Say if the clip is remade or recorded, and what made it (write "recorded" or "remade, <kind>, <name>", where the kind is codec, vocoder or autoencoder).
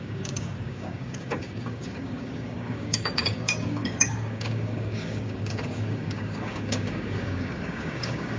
remade, codec, DAC